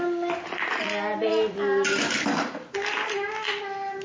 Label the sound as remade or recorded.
recorded